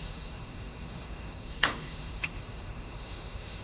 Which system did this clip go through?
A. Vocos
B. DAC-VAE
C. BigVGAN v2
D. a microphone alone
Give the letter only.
B